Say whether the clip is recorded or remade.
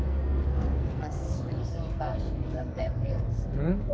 remade